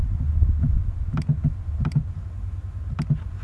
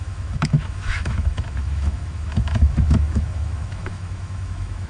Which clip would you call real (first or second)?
first